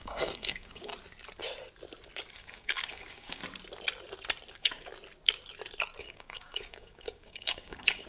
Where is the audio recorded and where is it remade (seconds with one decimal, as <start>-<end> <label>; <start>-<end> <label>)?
0.0-0.9 remade; 0.9-2.3 recorded; 2.3-3.4 remade; 3.4-4.5 recorded; 4.5-4.9 remade; 4.9-6.0 recorded; 6.0-8.1 remade